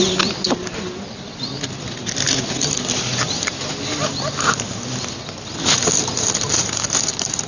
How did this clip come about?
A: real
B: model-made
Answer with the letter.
A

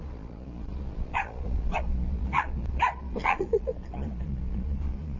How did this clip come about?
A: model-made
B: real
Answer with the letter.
A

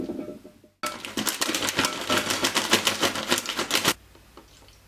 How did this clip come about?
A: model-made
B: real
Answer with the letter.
B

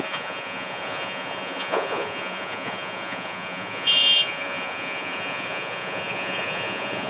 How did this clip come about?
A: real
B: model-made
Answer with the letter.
B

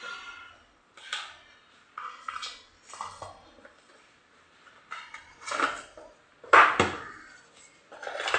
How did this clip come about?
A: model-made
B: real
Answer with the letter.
B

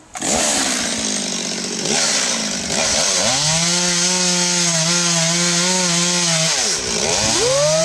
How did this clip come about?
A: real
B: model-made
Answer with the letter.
A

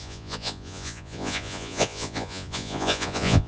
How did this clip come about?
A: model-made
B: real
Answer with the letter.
A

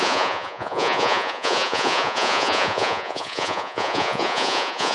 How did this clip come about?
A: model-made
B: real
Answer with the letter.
A